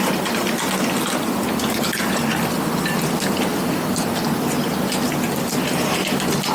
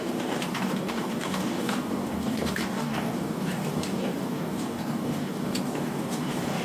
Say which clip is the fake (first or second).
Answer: second